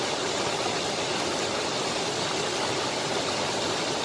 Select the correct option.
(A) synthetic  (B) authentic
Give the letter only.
B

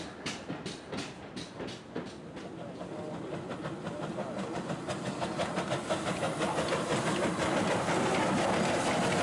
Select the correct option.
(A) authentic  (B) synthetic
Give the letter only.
A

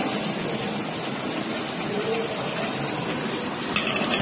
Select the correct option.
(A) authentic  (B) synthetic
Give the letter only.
B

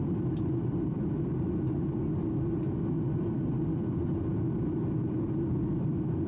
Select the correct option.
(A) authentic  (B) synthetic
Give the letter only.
A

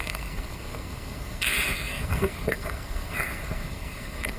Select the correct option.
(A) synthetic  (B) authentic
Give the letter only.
A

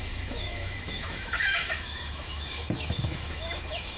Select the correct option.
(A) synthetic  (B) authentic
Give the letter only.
A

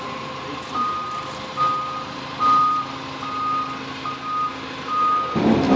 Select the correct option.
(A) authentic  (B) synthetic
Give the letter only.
A